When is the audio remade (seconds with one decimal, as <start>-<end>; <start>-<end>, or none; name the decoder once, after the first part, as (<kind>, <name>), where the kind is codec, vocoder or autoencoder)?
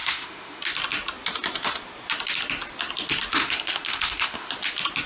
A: 0.0-0.6 (autoencoder, DAC-VAE); 3.3-4.5